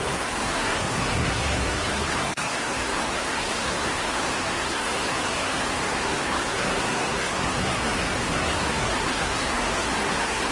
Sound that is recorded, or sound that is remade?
remade